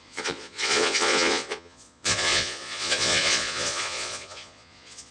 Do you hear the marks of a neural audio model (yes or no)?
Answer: yes